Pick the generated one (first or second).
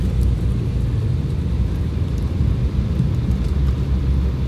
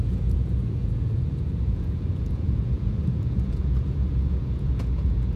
second